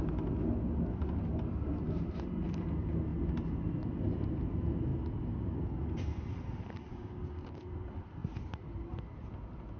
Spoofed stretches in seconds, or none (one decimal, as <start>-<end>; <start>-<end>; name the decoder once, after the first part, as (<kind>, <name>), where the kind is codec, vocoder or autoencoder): 6.9-7.6 (codec, DAC)